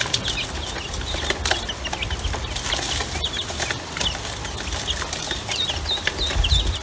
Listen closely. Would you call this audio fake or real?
real